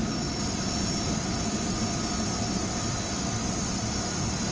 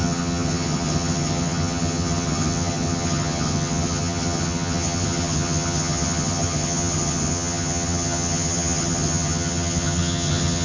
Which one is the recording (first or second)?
first